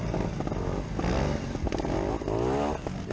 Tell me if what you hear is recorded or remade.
recorded